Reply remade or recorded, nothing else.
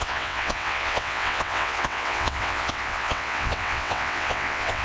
remade